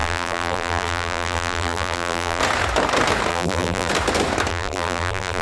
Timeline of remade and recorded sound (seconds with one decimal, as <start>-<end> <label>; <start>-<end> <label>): 0.0-2.4 remade; 2.4-3.3 recorded; 3.3-3.9 remade; 3.9-4.5 recorded; 4.5-5.4 remade